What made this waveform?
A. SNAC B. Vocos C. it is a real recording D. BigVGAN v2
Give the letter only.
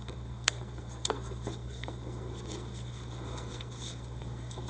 A